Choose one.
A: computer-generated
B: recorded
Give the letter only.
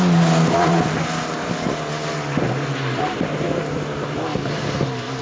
B